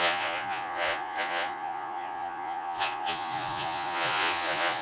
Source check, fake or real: fake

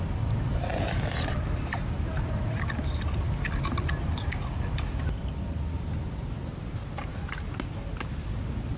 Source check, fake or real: real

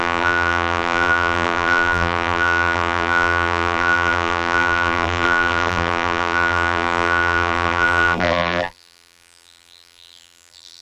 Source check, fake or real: fake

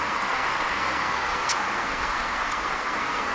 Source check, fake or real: fake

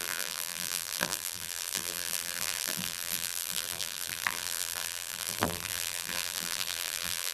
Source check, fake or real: fake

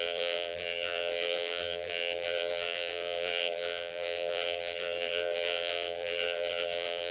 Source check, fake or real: fake